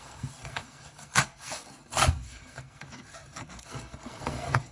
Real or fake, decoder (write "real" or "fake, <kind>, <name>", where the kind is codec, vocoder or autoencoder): fake, codec, SNAC